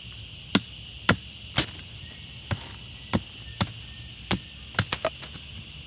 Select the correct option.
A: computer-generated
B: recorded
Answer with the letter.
B